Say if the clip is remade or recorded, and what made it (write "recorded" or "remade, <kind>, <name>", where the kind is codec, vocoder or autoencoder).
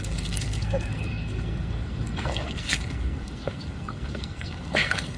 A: remade, codec, SNAC